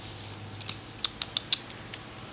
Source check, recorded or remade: recorded